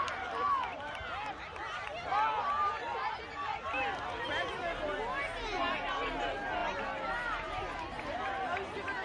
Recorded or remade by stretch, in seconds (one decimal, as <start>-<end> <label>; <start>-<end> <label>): 0.0-9.0 recorded